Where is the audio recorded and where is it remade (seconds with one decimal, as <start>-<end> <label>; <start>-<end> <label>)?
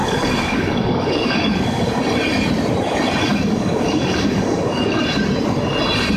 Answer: 0.0-2.0 remade; 2.0-3.3 recorded; 3.3-5.0 remade; 5.0-6.2 recorded